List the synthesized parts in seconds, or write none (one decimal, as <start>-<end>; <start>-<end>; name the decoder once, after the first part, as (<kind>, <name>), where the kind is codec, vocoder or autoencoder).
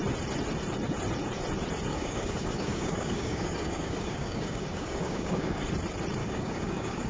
1.9-5.6 (codec, DAC); 6.2-7.1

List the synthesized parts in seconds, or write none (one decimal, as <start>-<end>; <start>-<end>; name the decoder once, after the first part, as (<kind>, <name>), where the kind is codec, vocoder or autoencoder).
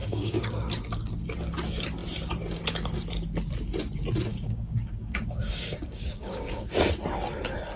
0.0-0.5 (codec, DAC); 4.3-6.7